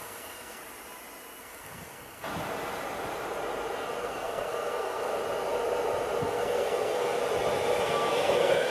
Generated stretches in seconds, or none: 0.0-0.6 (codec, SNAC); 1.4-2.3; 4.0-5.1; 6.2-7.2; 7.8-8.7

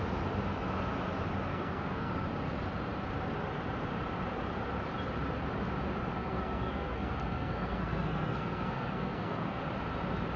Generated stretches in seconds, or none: 1.5-2.1 (codec, SNAC); 6.1-9.6

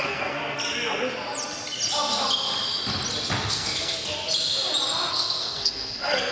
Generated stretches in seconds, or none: 0.0-0.4 (codec, SNAC); 3.5-4.1; 5.1-6.3

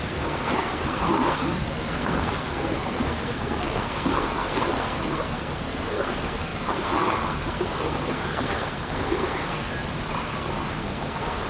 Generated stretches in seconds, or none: 0.0-9.7 (codec, SNAC); 10.2-11.5